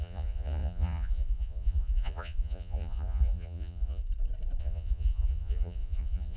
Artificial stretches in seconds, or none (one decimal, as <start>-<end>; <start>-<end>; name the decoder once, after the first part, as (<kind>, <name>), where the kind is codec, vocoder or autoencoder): 0.0-4.0 (vocoder, Vocos); 4.6-6.4